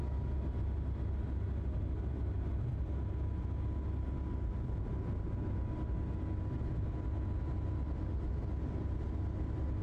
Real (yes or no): yes